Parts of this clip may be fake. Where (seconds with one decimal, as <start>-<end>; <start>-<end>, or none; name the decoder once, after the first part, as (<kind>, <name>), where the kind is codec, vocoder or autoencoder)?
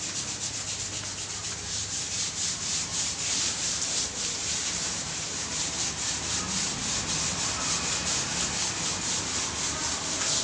1.4-2.3 (vocoder, BigVGAN v2); 2.9-5.8